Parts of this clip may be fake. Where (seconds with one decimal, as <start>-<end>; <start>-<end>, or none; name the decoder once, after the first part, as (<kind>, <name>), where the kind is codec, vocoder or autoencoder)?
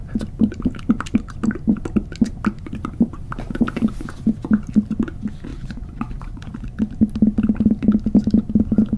5.5-6.8 (vocoder, Vocos)